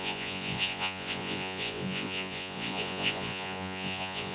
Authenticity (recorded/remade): remade